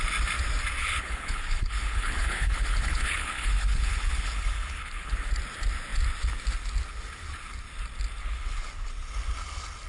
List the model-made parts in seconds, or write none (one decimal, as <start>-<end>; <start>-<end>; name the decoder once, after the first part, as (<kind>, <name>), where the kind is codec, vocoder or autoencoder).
0.8-5.3 (codec, HILCodec); 8.2-8.9